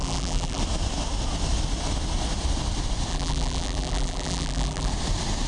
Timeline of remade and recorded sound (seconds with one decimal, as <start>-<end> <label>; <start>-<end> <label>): 0.0-0.6 remade; 0.6-3.1 recorded; 3.1-4.9 remade; 4.9-5.5 recorded